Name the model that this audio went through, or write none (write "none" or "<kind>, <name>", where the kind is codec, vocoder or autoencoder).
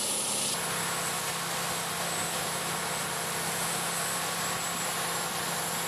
none